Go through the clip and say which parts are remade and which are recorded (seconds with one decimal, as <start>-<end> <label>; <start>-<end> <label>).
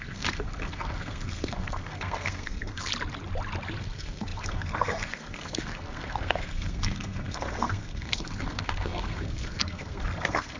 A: 0.0-2.9 remade; 2.9-3.8 recorded; 3.8-10.6 remade